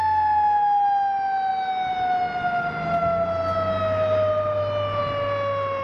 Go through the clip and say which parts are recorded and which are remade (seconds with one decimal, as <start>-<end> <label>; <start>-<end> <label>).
0.0-5.8 recorded